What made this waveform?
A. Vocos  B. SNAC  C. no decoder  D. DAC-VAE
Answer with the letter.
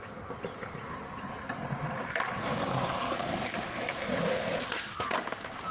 C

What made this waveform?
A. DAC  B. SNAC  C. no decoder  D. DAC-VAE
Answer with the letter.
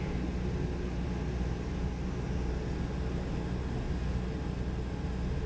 C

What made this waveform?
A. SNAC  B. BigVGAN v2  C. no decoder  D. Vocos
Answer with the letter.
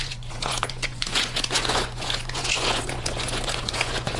D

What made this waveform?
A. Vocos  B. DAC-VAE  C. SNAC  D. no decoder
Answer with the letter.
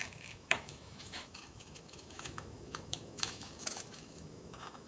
B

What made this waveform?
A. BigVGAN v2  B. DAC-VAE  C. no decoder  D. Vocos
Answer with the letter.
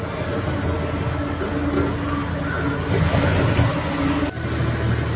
C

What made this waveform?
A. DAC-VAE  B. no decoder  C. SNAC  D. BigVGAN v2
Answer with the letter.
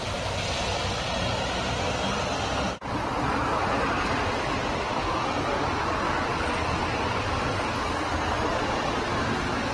B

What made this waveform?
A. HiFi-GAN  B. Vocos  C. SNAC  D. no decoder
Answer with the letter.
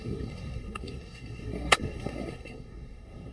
C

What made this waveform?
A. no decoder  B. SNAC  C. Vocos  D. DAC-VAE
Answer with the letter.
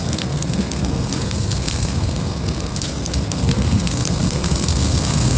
B